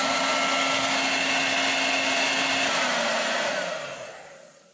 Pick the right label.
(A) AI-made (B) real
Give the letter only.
B